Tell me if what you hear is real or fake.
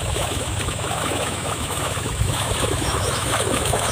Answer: fake